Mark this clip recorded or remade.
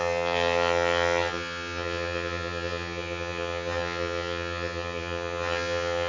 remade